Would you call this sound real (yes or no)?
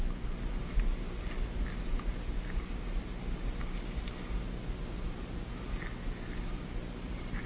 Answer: yes